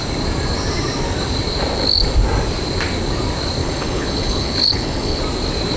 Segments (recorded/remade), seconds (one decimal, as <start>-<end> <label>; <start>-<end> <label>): 0.0-3.6 recorded; 3.6-5.2 remade; 5.2-5.8 recorded